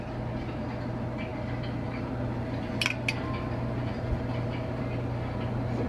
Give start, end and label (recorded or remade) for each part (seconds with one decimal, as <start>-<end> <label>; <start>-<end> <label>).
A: 0.0-5.9 recorded